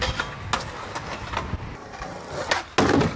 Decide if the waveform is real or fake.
real